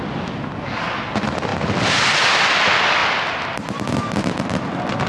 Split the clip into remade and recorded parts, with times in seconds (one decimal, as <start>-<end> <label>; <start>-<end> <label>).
0.0-5.1 recorded